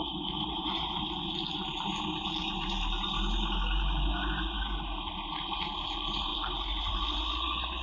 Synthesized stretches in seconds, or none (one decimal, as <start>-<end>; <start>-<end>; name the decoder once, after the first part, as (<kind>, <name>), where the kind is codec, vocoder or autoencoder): none